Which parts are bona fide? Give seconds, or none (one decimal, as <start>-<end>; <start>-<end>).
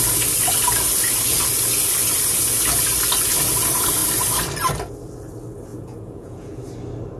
0.0-5.7; 6.6-7.2